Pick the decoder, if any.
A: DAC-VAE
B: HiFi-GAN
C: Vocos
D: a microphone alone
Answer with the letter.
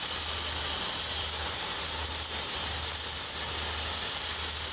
D